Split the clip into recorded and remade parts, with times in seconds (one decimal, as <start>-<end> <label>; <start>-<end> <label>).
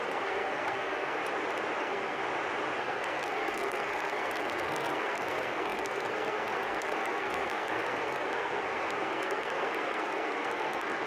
0.0-1.2 remade; 1.2-1.8 recorded; 1.8-2.2 remade; 2.2-2.8 recorded; 2.8-11.1 remade